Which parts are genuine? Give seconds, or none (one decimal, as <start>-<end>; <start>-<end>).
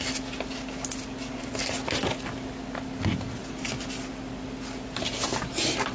0.0-5.9